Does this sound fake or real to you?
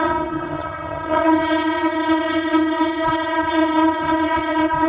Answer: fake